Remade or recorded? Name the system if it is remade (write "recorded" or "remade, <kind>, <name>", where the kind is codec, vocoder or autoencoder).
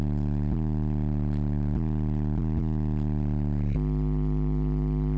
recorded